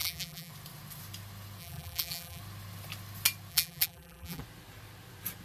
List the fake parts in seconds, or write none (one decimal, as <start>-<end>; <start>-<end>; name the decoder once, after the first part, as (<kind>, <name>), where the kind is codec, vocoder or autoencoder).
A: 0.0-0.5 (vocoder, BigVGAN v2); 1.6-2.4; 3.5-4.4